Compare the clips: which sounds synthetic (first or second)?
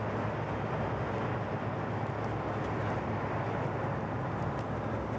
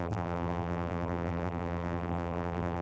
second